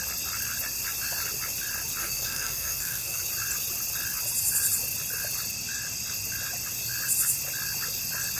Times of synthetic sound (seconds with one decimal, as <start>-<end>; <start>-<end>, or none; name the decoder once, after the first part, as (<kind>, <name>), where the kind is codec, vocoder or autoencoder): 2.0-3.2 (codec, SNAC)